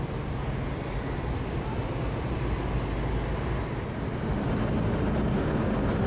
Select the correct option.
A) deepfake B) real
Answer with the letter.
B